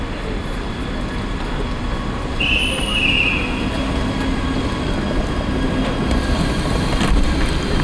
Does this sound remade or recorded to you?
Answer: recorded